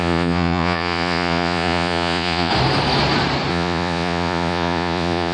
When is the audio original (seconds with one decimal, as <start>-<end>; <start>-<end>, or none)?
2.5-3.5